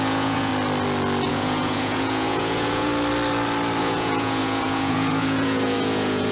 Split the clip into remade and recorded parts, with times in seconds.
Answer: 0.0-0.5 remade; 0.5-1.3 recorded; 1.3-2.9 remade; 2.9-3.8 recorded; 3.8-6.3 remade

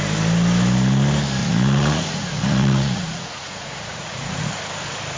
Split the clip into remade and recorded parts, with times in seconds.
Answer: 0.0-1.4 recorded; 1.4-4.5 remade; 4.5-5.2 recorded